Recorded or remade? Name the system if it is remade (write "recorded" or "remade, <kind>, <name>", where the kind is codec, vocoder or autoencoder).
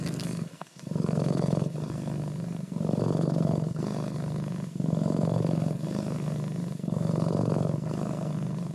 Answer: remade, codec, SNAC